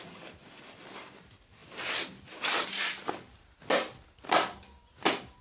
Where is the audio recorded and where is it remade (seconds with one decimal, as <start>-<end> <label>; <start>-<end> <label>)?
0.0-5.4 recorded